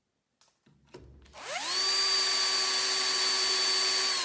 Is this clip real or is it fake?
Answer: real